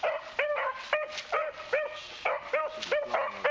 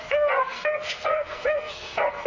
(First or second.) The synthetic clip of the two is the second